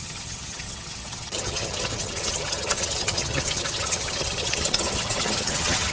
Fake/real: fake